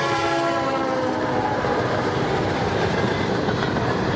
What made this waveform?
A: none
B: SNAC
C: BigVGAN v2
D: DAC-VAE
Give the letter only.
C